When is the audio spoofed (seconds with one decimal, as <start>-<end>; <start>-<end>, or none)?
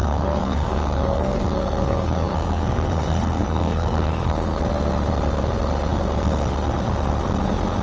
0.0-4.6